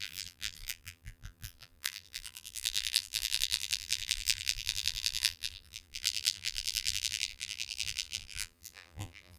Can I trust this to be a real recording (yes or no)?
no